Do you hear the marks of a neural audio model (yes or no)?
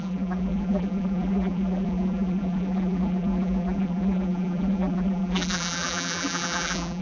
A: yes